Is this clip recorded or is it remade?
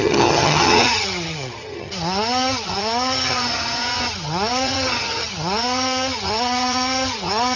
remade